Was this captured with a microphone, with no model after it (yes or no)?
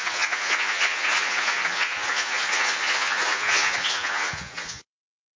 no